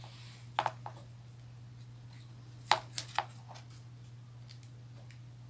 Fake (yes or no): no